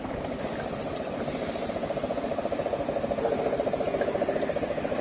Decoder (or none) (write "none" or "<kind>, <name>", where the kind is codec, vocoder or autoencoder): none